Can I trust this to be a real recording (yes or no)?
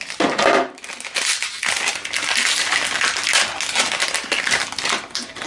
yes